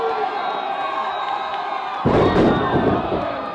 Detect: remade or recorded remade